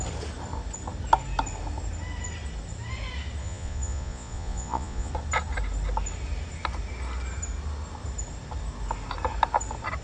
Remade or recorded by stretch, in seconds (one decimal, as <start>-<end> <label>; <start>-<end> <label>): 0.0-3.4 recorded; 3.4-5.1 remade; 5.1-10.0 recorded